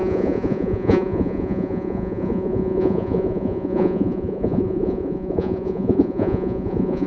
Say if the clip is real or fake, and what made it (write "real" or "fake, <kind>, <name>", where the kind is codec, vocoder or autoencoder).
fake, vocoder, Vocos